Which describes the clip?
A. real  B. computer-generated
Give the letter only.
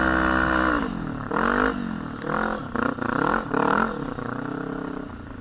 A